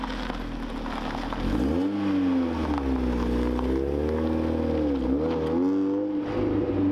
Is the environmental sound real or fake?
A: real